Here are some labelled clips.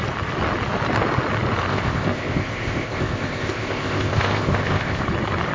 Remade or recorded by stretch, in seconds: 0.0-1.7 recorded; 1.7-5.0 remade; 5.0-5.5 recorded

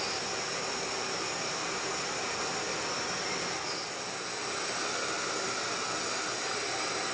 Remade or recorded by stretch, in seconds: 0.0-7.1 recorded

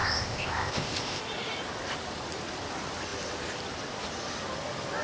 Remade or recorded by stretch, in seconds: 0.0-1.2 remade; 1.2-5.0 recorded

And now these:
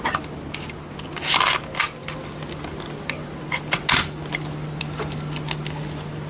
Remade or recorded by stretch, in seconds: 0.0-6.3 recorded

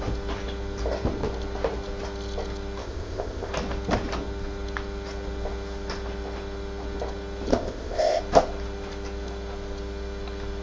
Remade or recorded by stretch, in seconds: 0.0-2.8 recorded; 2.8-3.5 remade; 3.5-7.5 recorded; 7.5-8.2 remade; 8.2-10.6 recorded

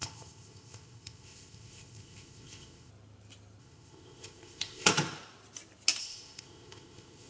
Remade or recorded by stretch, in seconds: 0.0-2.9 remade; 2.9-3.6 recorded; 3.6-4.9 remade; 4.9-6.0 recorded; 6.0-7.3 remade

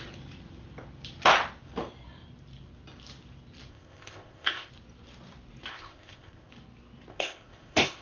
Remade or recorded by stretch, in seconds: 0.0-3.7 recorded; 3.7-4.7 remade; 4.7-5.7 recorded; 5.7-6.5 remade; 6.5-7.1 recorded; 7.1-8.0 remade

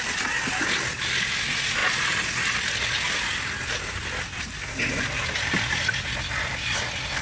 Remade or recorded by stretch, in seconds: 0.0-7.2 recorded